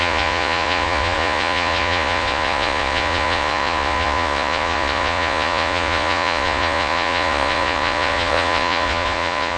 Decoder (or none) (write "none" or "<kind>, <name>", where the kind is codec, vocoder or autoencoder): vocoder, Vocos